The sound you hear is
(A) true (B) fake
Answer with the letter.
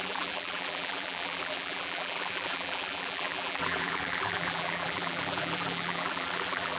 B